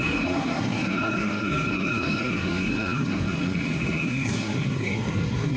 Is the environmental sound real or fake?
fake